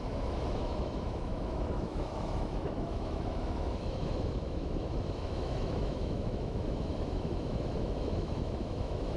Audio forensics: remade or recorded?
remade